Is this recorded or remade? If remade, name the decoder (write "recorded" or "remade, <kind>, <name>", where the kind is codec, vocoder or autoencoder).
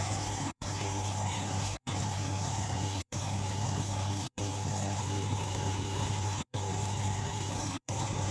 remade, codec, SNAC